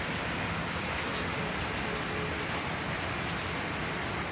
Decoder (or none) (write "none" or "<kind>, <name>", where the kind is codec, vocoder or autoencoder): none